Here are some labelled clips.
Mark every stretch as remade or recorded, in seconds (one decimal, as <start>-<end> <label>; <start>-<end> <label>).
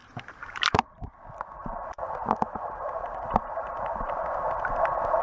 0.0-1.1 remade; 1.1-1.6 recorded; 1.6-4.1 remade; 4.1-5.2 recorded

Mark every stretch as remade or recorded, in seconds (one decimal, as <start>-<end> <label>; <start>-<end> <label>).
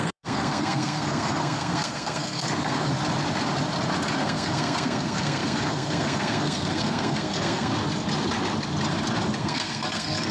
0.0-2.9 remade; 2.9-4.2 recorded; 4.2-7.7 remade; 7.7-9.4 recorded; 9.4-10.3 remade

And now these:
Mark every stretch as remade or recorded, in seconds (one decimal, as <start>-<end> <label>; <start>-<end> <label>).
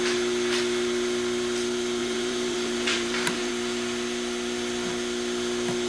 0.0-2.0 recorded; 2.0-3.5 remade; 3.5-5.9 recorded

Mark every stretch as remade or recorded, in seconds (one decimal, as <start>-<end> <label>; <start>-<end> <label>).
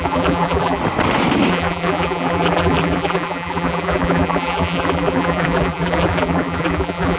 0.0-0.8 remade; 0.8-1.5 recorded; 1.5-7.2 remade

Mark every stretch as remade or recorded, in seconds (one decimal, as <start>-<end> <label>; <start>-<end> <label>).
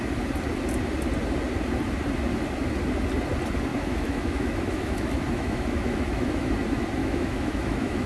0.0-3.7 recorded; 3.7-6.5 remade; 6.5-7.0 recorded; 7.0-8.1 remade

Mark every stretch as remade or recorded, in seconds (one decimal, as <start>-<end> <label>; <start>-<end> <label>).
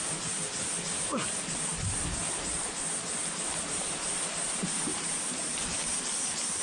0.0-4.9 recorded; 4.9-6.1 remade; 6.1-6.6 recorded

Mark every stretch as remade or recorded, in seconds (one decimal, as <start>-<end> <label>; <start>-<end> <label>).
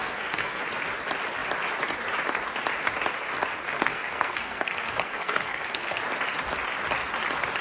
0.0-0.6 remade; 0.6-3.6 recorded; 3.6-6.0 remade; 6.0-7.6 recorded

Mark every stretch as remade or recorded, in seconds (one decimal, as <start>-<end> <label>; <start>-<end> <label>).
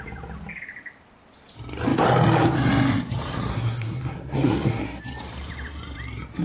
0.0-3.5 recorded; 3.5-5.0 remade; 5.0-6.4 recorded